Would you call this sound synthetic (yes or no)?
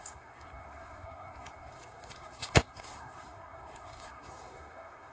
yes